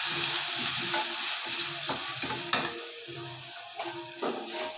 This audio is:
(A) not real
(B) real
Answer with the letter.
B